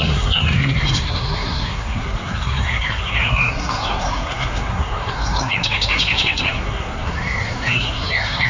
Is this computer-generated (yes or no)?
yes